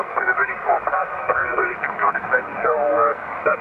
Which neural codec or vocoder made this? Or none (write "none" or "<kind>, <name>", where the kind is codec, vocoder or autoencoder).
codec, SNAC